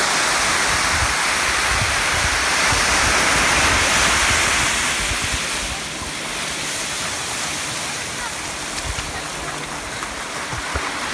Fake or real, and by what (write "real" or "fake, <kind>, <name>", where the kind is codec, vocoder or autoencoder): real